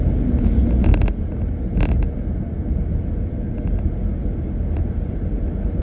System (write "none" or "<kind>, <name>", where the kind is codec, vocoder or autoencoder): none